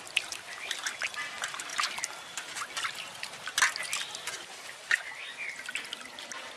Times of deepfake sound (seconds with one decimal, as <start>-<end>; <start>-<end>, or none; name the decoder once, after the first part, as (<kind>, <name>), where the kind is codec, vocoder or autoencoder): none